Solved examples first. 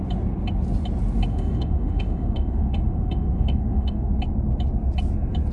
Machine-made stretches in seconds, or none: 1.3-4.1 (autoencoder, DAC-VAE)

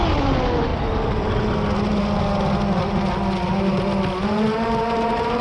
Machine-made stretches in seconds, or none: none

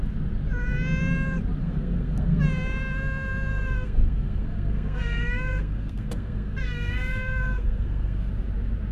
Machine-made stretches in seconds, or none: 1.6-2.4 (codec, SNAC); 3.5-8.3